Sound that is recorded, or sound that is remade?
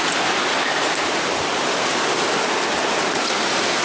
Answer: recorded